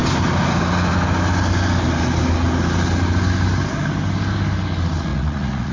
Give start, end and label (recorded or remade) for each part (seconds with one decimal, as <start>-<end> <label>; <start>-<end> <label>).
0.0-5.1 recorded; 5.1-5.7 remade